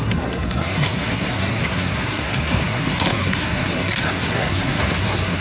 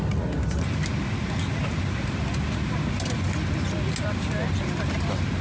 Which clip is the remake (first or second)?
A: first